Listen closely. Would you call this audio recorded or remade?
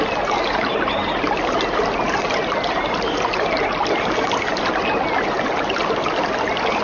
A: recorded